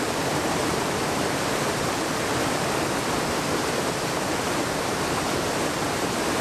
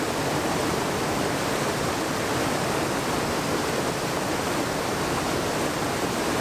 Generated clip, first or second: first